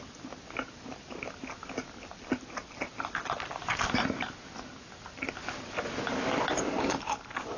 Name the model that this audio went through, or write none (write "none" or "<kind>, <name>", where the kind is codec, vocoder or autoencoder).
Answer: none